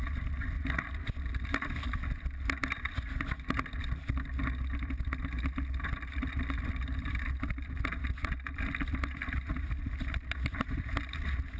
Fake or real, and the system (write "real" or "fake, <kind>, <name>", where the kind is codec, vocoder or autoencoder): real